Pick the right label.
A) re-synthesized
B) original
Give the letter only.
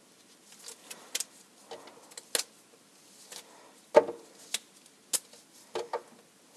B